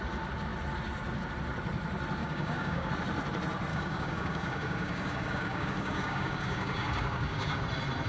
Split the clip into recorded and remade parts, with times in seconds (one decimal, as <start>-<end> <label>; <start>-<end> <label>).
0.0-2.2 recorded; 2.2-2.9 remade; 2.9-3.7 recorded; 3.7-7.6 remade; 7.6-8.1 recorded